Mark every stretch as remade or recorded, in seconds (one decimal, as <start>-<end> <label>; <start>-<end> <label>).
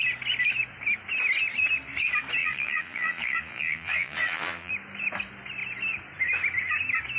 0.0-2.4 recorded; 2.4-4.7 remade; 4.7-7.2 recorded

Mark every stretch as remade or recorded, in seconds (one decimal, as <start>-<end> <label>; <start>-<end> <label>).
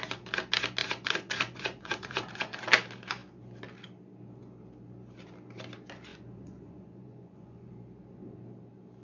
0.0-0.8 recorded; 0.8-2.6 remade; 2.6-6.1 recorded; 6.1-7.7 remade; 7.7-9.0 recorded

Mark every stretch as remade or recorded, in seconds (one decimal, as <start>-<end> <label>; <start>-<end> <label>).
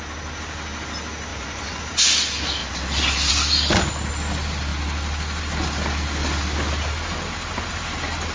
0.0-1.3 recorded; 1.3-1.8 remade; 1.8-8.3 recorded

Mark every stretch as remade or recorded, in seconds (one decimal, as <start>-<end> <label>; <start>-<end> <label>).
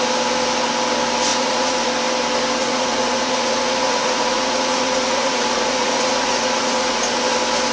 0.0-1.3 recorded; 1.3-1.9 remade; 1.9-2.6 recorded; 2.6-7.2 remade; 7.2-7.7 recorded